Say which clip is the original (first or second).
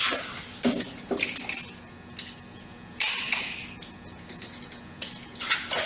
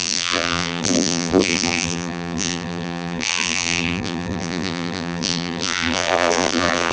first